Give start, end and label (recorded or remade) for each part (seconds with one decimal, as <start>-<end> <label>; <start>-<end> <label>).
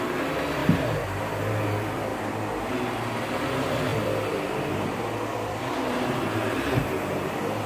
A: 0.0-0.6 recorded; 0.6-1.2 remade; 1.2-2.1 recorded; 2.1-2.7 remade; 2.7-3.9 recorded; 3.9-4.7 remade; 4.7-7.7 recorded